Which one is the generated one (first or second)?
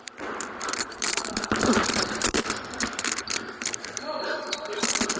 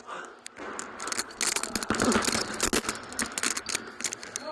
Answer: first